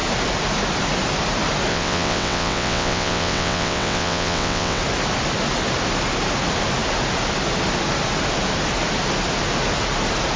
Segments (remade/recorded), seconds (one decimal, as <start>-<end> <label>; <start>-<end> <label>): 0.0-1.7 recorded; 1.7-4.8 remade; 4.8-10.4 recorded